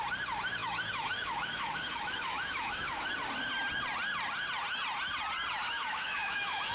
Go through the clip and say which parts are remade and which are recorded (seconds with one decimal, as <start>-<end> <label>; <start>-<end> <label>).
0.0-0.6 recorded; 0.6-3.1 remade; 3.1-5.6 recorded; 5.6-6.7 remade